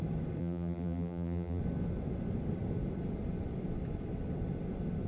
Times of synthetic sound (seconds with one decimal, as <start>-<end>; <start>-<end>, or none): 0.4-1.6